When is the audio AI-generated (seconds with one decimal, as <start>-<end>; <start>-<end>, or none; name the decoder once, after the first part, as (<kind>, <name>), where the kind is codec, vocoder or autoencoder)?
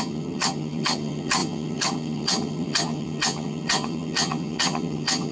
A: 0.0-5.3 (vocoder, HiFi-GAN)